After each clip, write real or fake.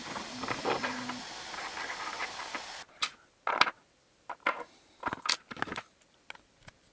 real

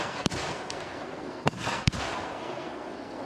fake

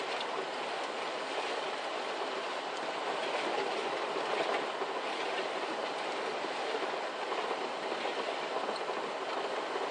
real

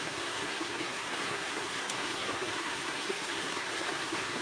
fake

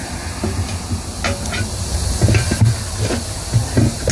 real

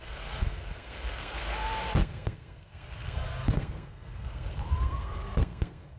fake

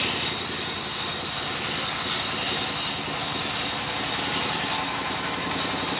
real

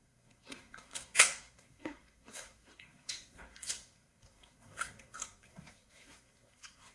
fake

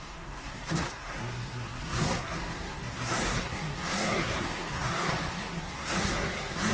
fake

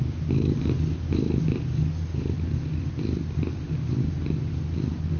real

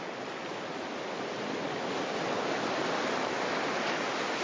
real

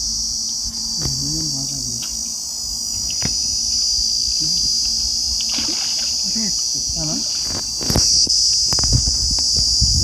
real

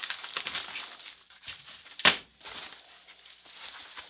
real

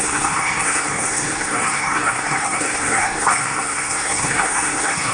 fake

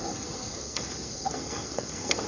fake